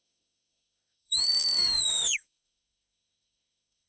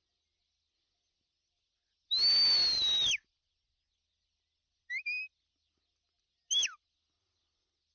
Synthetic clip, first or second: first